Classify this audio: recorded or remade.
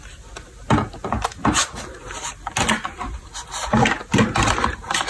recorded